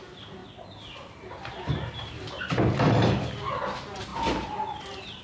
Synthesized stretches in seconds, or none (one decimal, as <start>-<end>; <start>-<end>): none